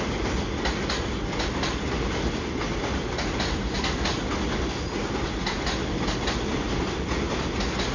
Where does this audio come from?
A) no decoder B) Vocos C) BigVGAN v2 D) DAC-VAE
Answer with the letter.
A